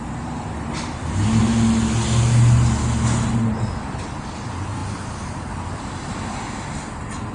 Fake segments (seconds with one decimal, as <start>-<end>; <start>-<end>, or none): 4.8-5.5